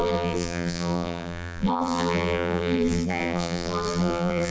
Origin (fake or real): fake